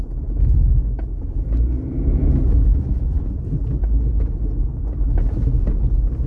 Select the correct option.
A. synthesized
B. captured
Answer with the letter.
B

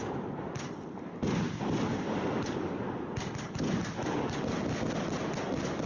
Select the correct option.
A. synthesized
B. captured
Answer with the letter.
B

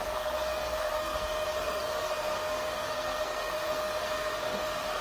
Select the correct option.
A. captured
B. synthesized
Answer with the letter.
B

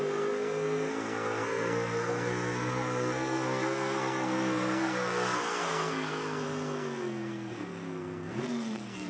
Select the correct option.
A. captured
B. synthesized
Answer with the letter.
B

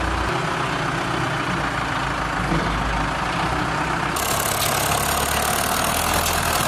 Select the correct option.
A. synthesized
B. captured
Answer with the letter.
B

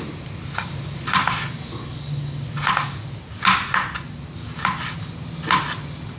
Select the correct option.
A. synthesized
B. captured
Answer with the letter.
B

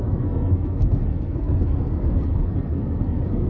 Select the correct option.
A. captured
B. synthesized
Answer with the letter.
B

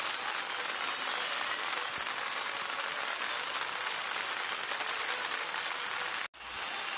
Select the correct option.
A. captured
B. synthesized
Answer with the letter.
A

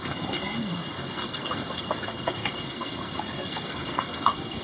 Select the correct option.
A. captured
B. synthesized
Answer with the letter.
B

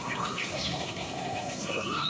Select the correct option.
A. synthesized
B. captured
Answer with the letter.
A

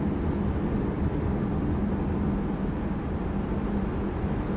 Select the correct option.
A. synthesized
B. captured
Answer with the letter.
B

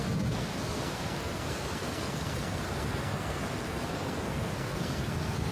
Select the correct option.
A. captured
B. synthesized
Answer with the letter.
B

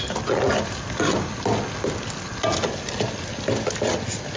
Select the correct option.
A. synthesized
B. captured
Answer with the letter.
B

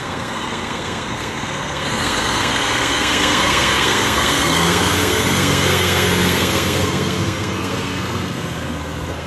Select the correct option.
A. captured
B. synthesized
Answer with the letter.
B